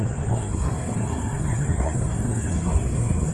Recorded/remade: remade